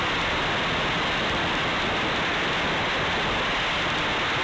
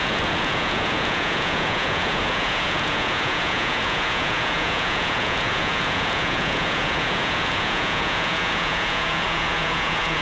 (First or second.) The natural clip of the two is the first